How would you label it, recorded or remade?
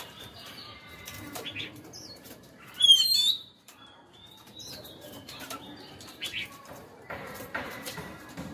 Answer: remade